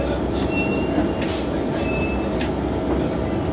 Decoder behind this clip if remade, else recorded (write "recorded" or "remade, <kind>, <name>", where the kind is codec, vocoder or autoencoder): recorded